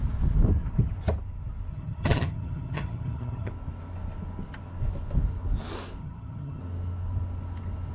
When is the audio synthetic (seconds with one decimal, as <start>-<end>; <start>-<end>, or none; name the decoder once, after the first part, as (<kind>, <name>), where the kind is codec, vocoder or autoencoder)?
1.7-3.5 (vocoder, HiFi-GAN); 6.0-6.6